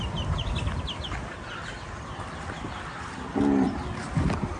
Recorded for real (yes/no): yes